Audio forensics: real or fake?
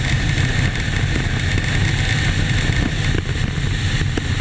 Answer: real